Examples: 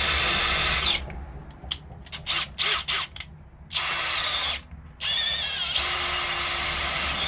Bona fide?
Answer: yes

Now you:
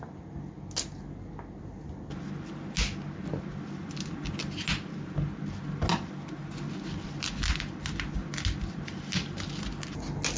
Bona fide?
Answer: yes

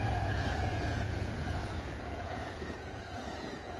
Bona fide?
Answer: no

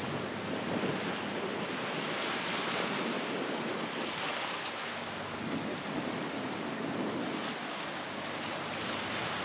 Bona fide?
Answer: yes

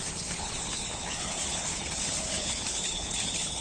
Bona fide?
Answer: no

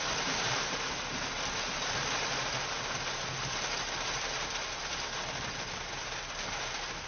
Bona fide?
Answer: yes